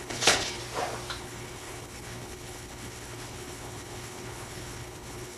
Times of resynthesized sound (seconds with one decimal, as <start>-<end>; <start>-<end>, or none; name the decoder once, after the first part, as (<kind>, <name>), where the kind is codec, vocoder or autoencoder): 0.0-0.6 (codec, HILCodec); 1.2-5.4